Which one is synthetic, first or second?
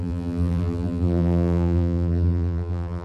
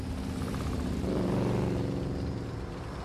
first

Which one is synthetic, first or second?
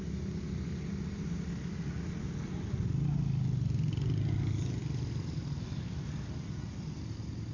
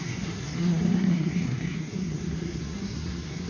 second